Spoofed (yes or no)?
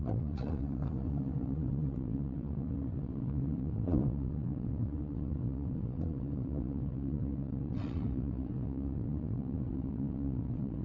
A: yes